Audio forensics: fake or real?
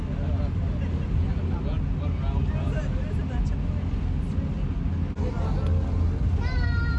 real